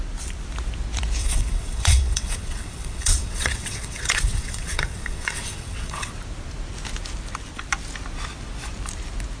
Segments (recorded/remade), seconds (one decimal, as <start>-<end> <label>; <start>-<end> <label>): 0.0-1.2 recorded; 1.2-6.1 remade; 6.1-9.4 recorded